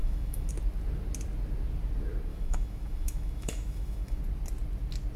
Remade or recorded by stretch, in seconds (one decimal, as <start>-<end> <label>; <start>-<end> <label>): 0.0-0.5 remade; 0.5-2.3 recorded; 2.3-4.2 remade; 4.2-5.2 recorded